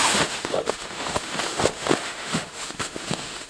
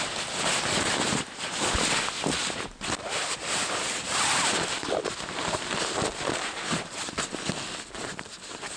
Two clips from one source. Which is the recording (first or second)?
second